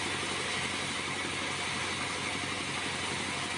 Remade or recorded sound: recorded